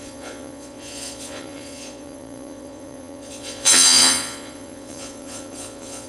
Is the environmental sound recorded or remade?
remade